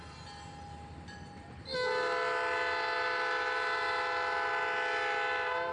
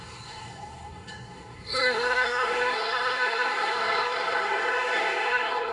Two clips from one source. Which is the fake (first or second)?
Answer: second